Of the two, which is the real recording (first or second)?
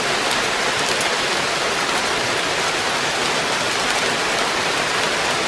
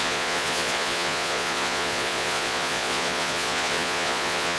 first